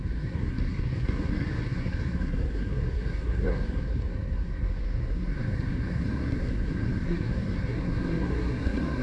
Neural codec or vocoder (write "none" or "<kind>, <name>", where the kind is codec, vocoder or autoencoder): codec, SNAC